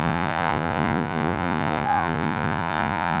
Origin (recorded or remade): remade